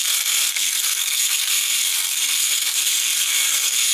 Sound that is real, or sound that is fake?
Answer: fake